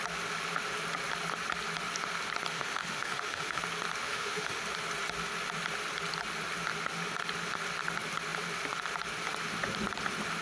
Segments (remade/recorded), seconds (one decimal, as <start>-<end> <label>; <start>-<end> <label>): 0.0-2.5 recorded; 2.5-3.6 remade; 3.6-4.0 recorded; 4.0-4.6 remade; 4.6-10.4 recorded